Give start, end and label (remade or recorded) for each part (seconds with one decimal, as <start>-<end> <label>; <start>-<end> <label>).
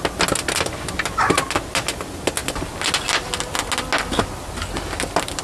0.0-5.4 recorded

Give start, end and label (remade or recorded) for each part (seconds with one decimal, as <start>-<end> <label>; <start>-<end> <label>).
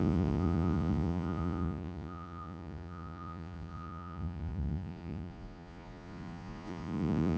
0.0-7.4 remade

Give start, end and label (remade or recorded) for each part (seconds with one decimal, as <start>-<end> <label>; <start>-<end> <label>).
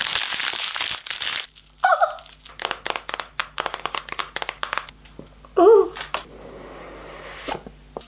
0.0-8.1 recorded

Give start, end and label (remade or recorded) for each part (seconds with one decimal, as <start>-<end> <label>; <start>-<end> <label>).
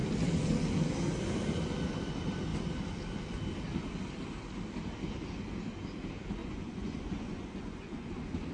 0.0-6.4 recorded; 6.4-8.1 remade; 8.1-8.5 recorded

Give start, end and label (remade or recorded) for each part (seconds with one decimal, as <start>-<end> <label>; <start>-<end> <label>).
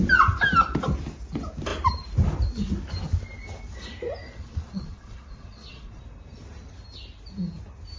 0.0-4.2 recorded; 4.2-6.0 remade; 6.0-8.0 recorded